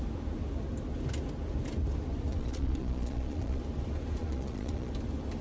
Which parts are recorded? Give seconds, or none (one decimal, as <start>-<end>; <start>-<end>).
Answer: 0.0-2.3; 3.6-4.2; 4.9-5.4